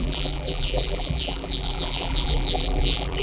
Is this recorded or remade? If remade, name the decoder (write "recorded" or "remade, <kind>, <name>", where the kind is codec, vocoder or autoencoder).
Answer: remade, vocoder, BigVGAN v2